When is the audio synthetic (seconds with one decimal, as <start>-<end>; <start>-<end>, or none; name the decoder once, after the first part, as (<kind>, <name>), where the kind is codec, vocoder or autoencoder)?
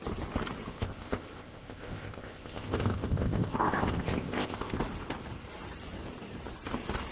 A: 0.7-4.8 (codec, ZipCodec)